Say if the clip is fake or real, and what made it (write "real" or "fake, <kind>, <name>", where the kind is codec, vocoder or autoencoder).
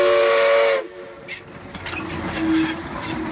real